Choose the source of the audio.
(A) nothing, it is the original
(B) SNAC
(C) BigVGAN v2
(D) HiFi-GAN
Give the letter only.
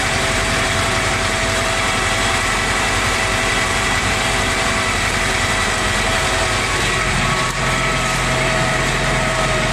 C